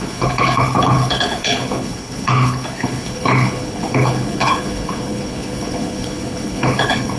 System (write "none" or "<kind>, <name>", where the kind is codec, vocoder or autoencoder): codec, HILCodec